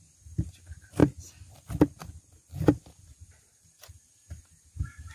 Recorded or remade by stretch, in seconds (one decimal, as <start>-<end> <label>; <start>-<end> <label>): 0.0-5.1 recorded